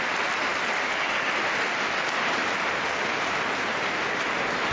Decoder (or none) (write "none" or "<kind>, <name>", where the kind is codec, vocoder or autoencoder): none